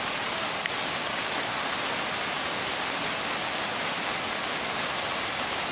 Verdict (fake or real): real